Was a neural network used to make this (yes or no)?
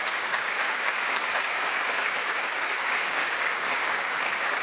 yes